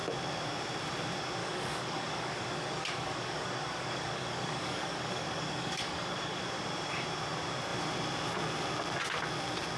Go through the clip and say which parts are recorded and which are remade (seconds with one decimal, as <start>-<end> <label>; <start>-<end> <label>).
0.0-1.4 recorded; 1.4-6.4 remade; 6.4-9.8 recorded